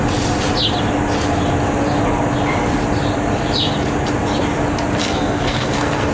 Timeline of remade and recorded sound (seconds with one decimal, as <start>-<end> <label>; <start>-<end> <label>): 0.0-5.0 recorded; 5.0-6.1 remade